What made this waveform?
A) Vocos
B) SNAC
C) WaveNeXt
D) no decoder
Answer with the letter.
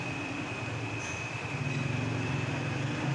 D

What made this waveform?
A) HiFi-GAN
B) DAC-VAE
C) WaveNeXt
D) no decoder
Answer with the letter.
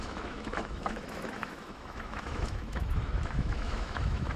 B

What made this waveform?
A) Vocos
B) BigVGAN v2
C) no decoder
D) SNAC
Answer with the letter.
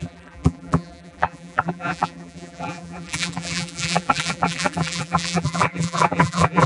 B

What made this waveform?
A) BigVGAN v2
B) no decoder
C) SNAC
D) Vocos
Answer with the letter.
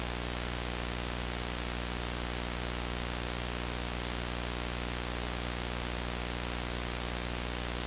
B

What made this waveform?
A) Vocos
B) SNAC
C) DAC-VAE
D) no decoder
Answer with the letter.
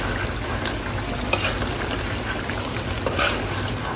D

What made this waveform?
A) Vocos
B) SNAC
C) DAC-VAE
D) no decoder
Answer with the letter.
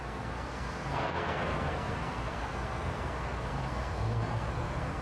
B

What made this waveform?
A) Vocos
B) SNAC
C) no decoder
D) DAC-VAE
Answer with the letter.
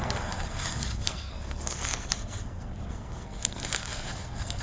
B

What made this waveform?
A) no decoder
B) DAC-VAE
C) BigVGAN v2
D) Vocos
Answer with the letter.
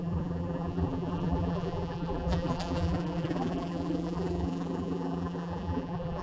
C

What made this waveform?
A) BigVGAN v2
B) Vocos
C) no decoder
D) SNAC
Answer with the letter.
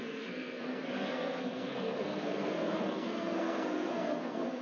D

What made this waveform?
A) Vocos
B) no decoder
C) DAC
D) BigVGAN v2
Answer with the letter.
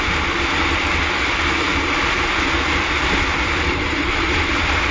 B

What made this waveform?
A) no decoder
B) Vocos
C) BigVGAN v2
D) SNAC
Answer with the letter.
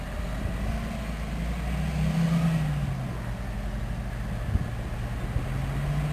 A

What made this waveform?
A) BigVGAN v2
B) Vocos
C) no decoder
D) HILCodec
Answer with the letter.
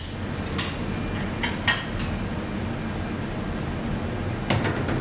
C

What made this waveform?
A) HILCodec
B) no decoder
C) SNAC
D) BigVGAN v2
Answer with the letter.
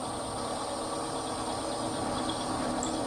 B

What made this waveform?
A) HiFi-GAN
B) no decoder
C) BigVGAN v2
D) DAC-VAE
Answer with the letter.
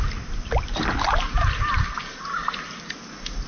B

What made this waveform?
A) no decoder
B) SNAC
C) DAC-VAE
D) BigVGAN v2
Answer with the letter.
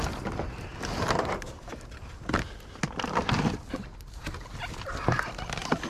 A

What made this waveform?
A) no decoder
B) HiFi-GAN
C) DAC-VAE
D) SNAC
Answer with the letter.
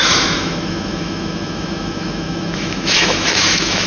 C